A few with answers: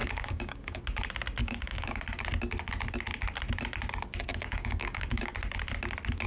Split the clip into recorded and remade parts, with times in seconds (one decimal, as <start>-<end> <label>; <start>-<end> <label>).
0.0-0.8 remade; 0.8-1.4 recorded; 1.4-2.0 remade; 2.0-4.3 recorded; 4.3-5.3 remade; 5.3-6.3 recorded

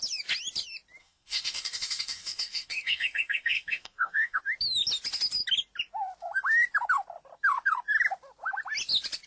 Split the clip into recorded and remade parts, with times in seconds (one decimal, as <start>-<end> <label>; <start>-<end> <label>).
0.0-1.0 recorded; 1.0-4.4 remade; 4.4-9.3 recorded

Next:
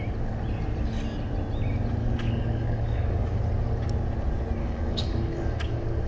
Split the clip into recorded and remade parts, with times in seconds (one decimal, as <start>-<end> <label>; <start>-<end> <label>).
0.0-2.0 recorded; 2.0-3.4 remade; 3.4-4.6 recorded; 4.6-6.1 remade

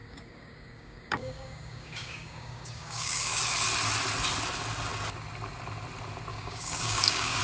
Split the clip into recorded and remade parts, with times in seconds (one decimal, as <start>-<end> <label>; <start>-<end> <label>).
0.0-3.4 remade; 3.4-6.3 recorded; 6.3-7.4 remade

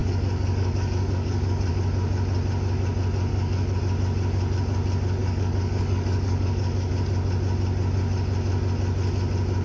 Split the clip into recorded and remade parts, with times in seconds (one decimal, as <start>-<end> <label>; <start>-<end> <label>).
0.0-1.7 remade; 1.7-3.3 recorded; 3.3-3.8 remade; 3.8-5.2 recorded; 5.2-6.9 remade; 6.9-9.6 recorded